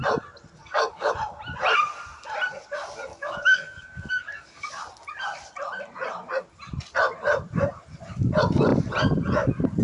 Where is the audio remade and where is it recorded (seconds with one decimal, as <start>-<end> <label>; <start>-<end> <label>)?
0.0-0.6 recorded; 0.6-1.1 remade; 1.1-3.1 recorded; 3.1-4.7 remade; 4.7-9.8 recorded